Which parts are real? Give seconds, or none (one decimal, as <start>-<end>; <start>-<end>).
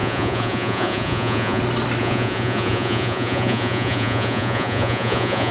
1.6-2.0